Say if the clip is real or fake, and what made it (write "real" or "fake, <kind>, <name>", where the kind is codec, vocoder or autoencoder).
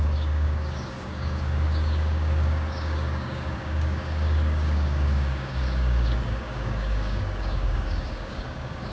fake, codec, DAC